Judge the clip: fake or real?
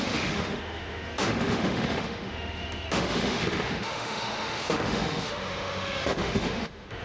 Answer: fake